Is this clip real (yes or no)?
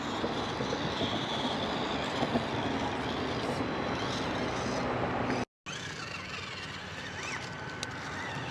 yes